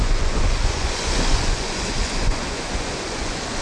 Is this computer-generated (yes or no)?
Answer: yes